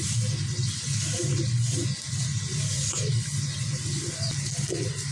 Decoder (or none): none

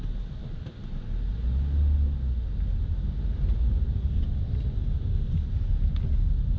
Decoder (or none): none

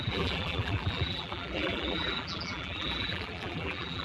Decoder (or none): vocoder, BigVGAN v2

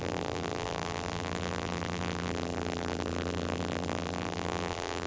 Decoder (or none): vocoder, BigVGAN v2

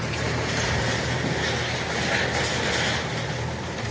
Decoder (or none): none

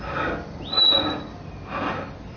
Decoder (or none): none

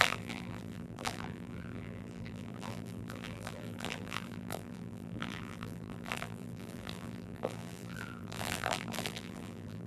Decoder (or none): vocoder, BigVGAN v2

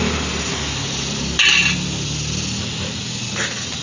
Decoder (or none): none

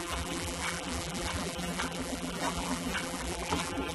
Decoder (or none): vocoder, BigVGAN v2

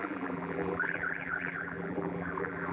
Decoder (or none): vocoder, BigVGAN v2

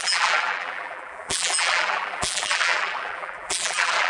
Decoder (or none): vocoder, BigVGAN v2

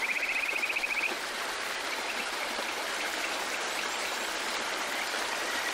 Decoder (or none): vocoder, BigVGAN v2